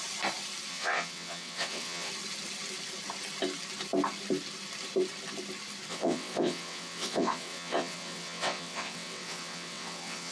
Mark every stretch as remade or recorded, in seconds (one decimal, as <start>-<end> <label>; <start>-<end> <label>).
0.0-0.7 recorded; 0.7-2.1 remade; 2.1-5.9 recorded; 5.9-10.3 remade